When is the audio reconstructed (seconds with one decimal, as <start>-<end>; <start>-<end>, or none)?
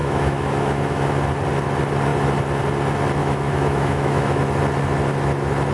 0.0-1.0; 3.2-4.4